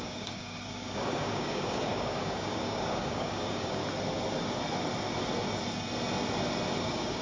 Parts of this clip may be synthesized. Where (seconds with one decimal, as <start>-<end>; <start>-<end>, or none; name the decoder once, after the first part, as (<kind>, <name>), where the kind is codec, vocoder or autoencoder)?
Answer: 0.0-3.8 (codec, DAC); 6.8-7.2